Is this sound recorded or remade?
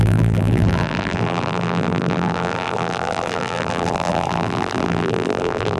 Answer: remade